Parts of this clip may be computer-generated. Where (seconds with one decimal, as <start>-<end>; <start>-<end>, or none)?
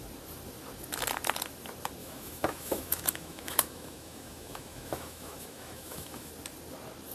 2.0-6.3